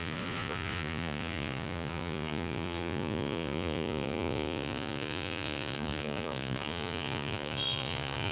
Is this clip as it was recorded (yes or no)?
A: no